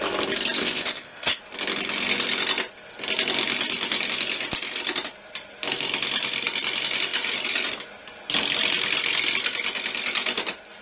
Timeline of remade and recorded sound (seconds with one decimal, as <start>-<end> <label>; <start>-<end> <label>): 0.0-0.6 recorded; 0.6-1.4 remade; 1.4-10.8 recorded